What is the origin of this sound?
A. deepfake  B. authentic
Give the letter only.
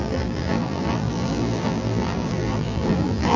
A